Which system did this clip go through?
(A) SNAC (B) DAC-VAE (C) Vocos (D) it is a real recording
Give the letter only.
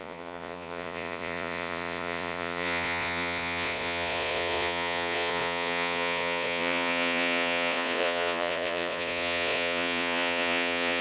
C